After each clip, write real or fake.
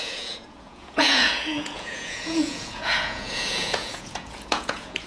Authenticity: fake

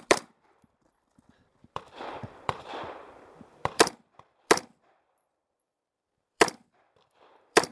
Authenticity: fake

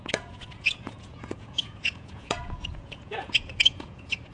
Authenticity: fake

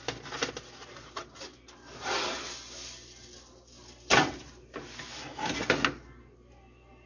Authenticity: real